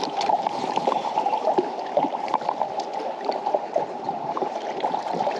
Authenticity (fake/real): fake